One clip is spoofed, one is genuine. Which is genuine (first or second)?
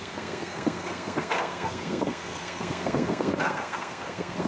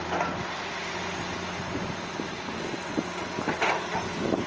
second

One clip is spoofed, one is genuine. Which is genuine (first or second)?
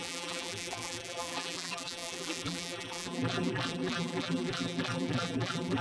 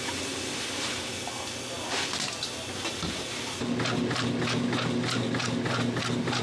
second